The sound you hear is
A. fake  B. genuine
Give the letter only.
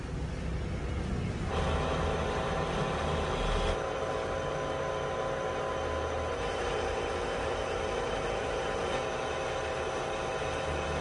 B